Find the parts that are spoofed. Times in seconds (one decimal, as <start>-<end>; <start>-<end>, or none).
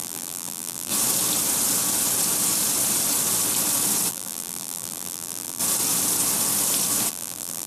0.0-0.9; 4.1-5.6; 7.1-7.7